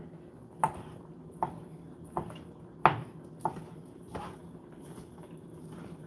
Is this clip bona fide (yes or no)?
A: yes